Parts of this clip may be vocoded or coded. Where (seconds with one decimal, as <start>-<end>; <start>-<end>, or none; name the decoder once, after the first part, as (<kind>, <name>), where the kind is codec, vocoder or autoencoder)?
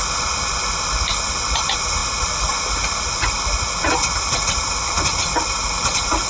none